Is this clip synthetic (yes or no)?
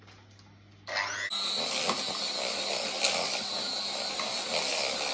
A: no